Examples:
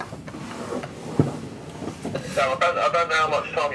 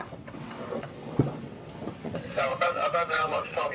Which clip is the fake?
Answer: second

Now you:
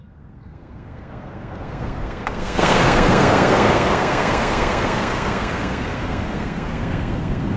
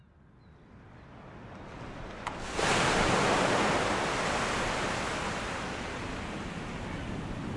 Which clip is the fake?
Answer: first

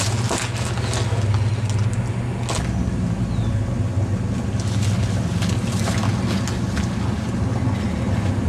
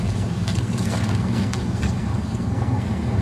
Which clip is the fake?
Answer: second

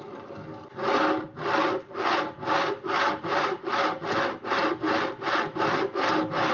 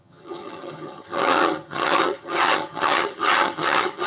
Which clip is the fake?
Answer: second